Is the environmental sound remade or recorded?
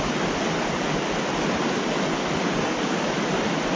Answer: recorded